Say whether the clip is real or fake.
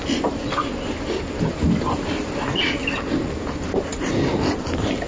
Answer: real